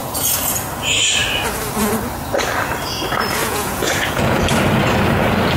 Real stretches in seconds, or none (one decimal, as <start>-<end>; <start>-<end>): 0.5-3.4; 4.4-5.6